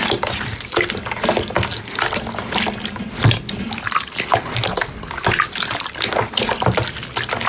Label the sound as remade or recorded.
recorded